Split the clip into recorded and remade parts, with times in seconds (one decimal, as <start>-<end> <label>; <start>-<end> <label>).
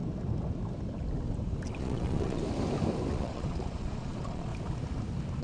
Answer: 0.0-1.8 recorded; 1.8-2.4 remade; 2.4-3.1 recorded; 3.1-4.5 remade; 4.5-5.4 recorded